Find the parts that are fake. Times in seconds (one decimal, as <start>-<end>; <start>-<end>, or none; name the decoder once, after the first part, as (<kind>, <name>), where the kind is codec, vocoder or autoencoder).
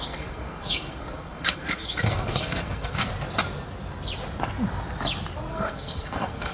0.0-3.1 (codec, SNAC); 5.5-6.5